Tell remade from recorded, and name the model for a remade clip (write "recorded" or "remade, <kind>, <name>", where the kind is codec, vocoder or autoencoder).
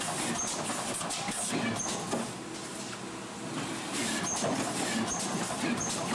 recorded